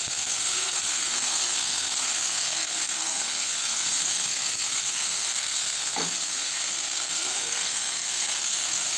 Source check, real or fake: fake